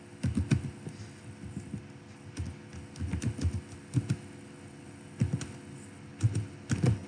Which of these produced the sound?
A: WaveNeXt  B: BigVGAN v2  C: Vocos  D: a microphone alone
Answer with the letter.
D